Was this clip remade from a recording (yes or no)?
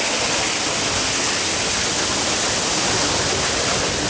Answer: no